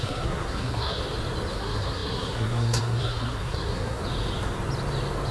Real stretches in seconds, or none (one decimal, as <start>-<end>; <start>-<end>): 1.0-1.5; 4.0-5.3